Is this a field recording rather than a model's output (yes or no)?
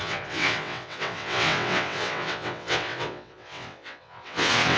no